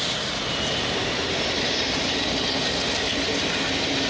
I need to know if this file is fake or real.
real